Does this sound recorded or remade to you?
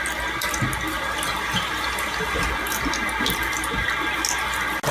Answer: recorded